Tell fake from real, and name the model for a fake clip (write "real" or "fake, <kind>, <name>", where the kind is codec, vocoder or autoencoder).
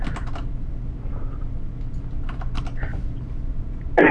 real